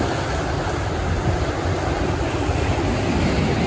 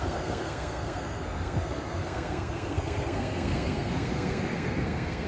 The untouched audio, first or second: first